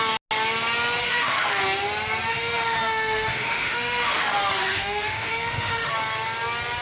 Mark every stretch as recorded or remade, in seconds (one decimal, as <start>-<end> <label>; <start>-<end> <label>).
0.0-1.0 recorded; 1.0-1.6 remade; 1.6-2.3 recorded; 2.3-5.9 remade; 5.9-6.8 recorded